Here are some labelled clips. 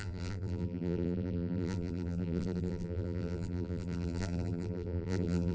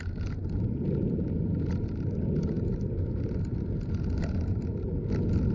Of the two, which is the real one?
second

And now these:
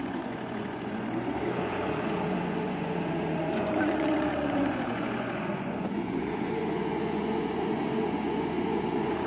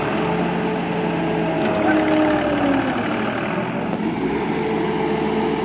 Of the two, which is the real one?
second